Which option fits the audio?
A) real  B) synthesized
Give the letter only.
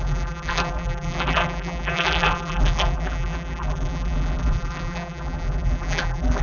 B